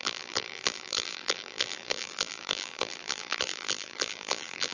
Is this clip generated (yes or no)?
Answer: yes